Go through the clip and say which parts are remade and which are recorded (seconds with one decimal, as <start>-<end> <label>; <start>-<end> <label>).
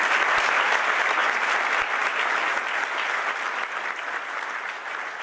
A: 0.0-5.2 recorded